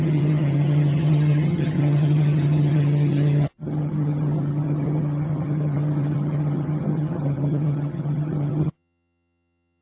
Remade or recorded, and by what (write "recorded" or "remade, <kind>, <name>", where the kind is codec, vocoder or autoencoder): remade, vocoder, HiFi-GAN